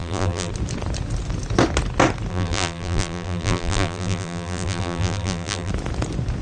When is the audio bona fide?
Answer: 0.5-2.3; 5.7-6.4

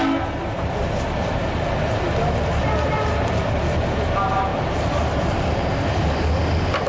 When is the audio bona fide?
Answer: 0.0-0.8; 1.7-4.5; 5.7-6.9

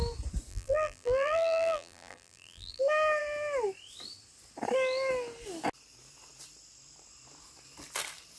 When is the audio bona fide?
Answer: 0.0-0.5; 2.8-8.4

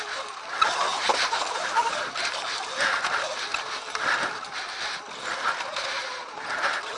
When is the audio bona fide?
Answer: 0.0-0.9; 2.2-3.8; 4.4-7.0

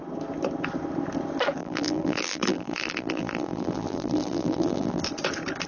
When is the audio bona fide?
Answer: 0.0-1.6; 5.0-5.7

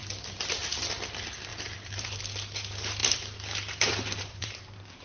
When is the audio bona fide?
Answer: 0.0-1.5; 2.2-3.0; 4.5-5.0

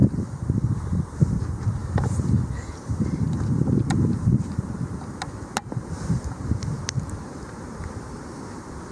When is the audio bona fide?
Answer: 0.0-1.0; 1.8-2.8

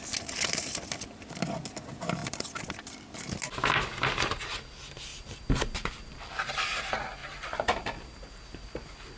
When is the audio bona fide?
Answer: 0.0-2.2; 3.1-5.1; 6.3-7.2